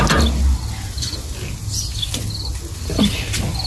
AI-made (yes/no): no